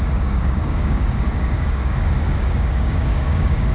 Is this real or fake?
fake